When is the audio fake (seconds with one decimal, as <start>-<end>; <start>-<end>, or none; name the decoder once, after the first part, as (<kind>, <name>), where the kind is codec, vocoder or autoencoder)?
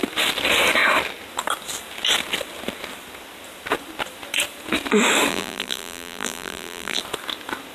5.3-7.0 (vocoder, BigVGAN v2)